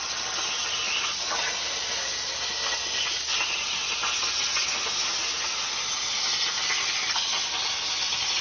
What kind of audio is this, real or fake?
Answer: real